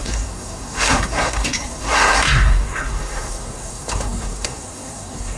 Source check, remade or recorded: remade